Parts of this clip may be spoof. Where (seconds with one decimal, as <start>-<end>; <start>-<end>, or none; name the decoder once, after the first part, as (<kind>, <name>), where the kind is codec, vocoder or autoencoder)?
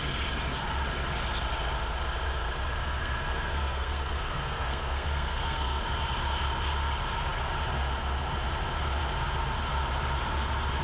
2.8-5.8 (codec, SNAC)